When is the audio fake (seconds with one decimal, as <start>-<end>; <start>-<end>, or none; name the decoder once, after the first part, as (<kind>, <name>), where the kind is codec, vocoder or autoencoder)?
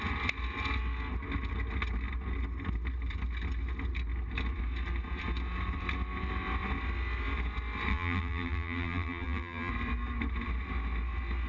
7.9-9.7 (vocoder, BigVGAN v2)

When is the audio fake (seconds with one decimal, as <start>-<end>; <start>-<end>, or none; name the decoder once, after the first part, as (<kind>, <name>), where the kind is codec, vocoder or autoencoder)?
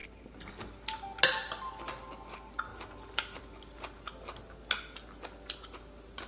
0.0-0.5 (vocoder, BigVGAN v2); 2.7-3.4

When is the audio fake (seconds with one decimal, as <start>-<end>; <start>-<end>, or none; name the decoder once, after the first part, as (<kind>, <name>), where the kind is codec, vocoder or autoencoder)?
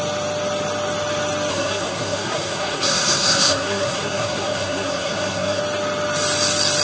1.5-5.6 (codec, SNAC)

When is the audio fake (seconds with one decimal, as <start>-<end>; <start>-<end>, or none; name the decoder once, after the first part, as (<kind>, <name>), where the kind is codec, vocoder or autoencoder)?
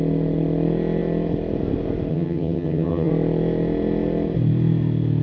2.1-3.1 (vocoder, HiFi-GAN)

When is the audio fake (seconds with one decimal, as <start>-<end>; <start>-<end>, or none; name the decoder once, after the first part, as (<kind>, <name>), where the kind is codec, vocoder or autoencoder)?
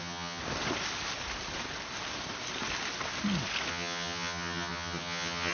0.0-0.4 (vocoder, HiFi-GAN); 3.7-5.5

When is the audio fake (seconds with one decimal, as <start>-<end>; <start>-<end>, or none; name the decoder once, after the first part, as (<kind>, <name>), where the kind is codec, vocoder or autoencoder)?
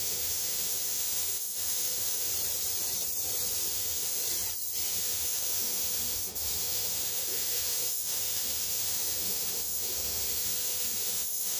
0.0-2.3 (autoencoder, DAC-VAE); 3.7-4.2; 4.9-11.6